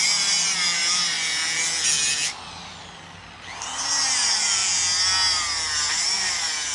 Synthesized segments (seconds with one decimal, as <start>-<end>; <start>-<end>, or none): 0.0-0.8; 2.5-4.6; 5.9-6.7